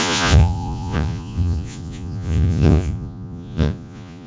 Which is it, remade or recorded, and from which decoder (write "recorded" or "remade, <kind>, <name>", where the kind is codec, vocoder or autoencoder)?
remade, vocoder, Vocos